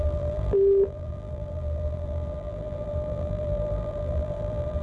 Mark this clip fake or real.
fake